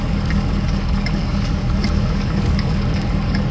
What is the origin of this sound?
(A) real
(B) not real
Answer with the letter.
B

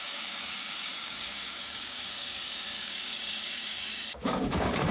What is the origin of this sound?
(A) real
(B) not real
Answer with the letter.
B